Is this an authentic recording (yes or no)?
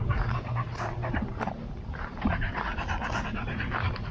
no